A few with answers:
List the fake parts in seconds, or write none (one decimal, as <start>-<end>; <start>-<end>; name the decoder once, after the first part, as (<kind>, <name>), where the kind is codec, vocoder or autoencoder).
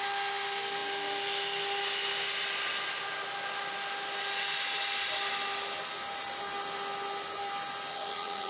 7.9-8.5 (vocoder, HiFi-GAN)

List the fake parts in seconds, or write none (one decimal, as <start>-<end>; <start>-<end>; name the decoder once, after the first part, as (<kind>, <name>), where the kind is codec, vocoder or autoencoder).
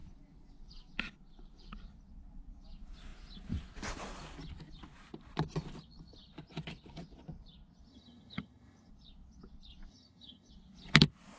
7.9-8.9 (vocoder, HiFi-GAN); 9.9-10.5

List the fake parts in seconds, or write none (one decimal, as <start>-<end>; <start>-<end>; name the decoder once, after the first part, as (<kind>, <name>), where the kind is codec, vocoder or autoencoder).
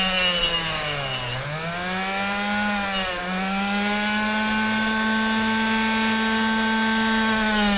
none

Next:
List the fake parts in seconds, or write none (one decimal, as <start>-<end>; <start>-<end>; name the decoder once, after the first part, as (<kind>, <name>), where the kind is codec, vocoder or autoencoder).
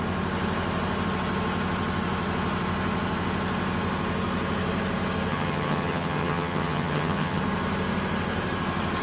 5.3-7.4 (vocoder, HiFi-GAN)